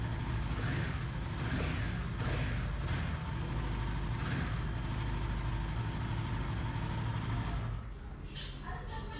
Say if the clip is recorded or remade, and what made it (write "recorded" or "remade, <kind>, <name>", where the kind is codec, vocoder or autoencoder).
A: recorded